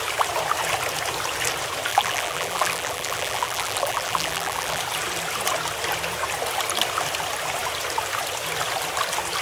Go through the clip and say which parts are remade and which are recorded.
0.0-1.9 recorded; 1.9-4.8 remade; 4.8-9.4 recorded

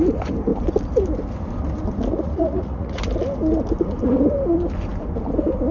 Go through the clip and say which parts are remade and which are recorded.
0.0-2.1 recorded; 2.1-3.0 remade; 3.0-5.7 recorded

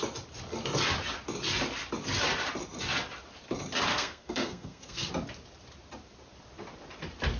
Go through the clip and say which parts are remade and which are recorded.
0.0-3.9 recorded; 3.9-5.1 remade; 5.1-7.4 recorded

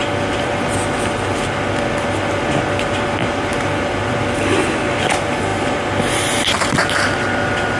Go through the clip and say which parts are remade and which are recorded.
0.0-7.8 recorded

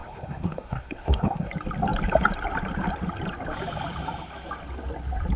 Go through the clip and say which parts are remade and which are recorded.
0.0-1.5 remade; 1.5-5.4 recorded